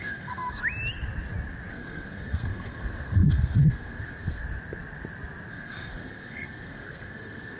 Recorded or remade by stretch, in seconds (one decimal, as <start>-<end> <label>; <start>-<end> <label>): 0.0-0.6 remade; 0.6-1.7 recorded; 1.7-4.4 remade; 4.4-5.5 recorded; 5.5-7.6 remade